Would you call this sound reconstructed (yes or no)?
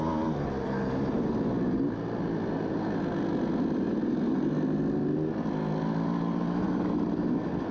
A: no